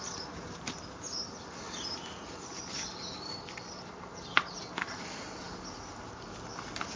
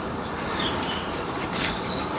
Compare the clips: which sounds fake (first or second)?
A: second